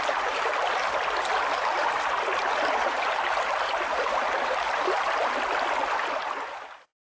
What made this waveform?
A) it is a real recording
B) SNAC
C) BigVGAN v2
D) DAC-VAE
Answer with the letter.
C